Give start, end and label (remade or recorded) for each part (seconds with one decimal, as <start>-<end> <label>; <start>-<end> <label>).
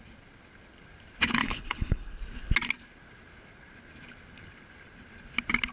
0.0-1.4 recorded; 1.4-2.1 remade; 2.1-5.7 recorded